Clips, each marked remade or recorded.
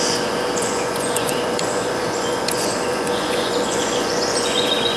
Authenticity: remade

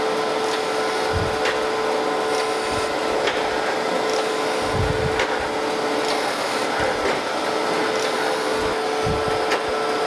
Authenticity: recorded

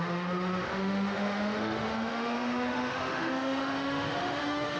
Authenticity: remade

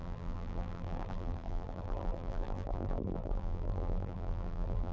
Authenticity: remade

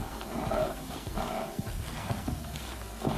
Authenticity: remade